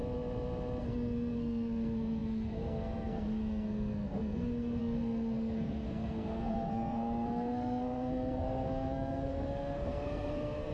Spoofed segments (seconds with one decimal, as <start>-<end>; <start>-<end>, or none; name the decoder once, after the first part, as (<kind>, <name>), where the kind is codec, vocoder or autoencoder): 0.8-10.7 (codec, SNAC)